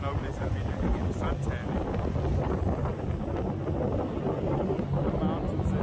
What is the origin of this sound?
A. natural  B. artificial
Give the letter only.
A